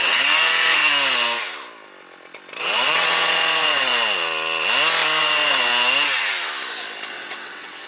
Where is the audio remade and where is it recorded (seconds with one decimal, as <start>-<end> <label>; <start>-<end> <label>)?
0.0-0.8 remade; 0.8-2.6 recorded; 2.6-3.9 remade; 3.9-5.2 recorded; 5.2-5.7 remade; 5.7-7.1 recorded; 7.1-7.9 remade